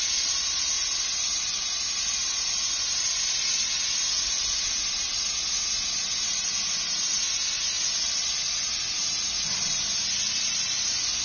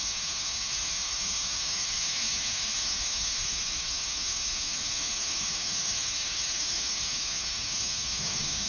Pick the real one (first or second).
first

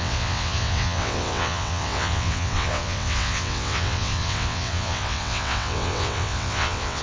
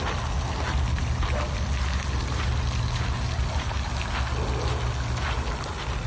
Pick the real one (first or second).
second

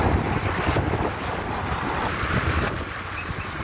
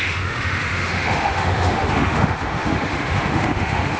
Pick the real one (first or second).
first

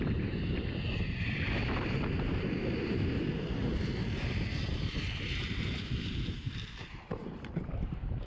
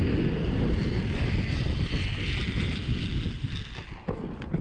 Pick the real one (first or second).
second